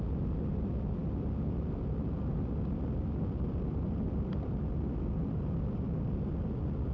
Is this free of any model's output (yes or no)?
yes